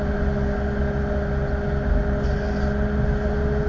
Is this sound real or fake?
real